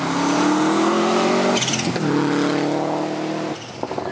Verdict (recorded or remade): recorded